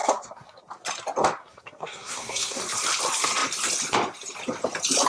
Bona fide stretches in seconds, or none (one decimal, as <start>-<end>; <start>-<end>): 0.6-1.4; 2.6-5.1

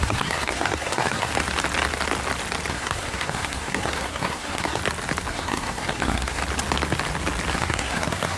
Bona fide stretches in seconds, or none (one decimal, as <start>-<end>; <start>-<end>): 1.3-2.7; 4.8-5.3; 6.4-7.5

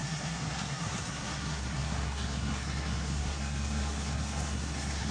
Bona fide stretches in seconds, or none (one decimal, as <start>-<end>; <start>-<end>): none

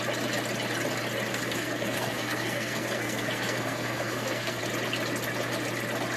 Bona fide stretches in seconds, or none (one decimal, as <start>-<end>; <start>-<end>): 0.0-1.3; 4.6-6.2

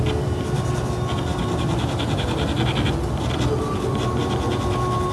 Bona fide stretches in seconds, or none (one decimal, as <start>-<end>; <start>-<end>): 0.0-5.1